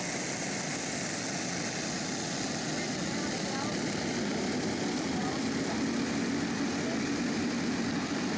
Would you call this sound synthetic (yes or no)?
no